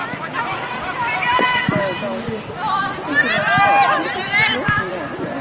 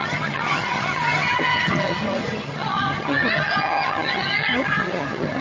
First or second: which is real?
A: first